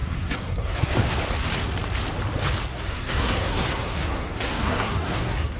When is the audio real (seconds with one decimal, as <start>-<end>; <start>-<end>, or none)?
0.9-2.7